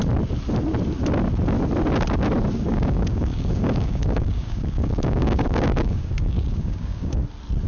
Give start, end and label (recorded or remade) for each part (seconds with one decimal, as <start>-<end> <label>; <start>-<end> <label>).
0.0-2.7 recorded; 2.7-7.2 remade; 7.2-7.7 recorded